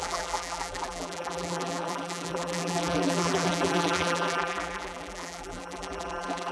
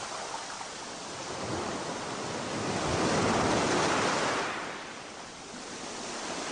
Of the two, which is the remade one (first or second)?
first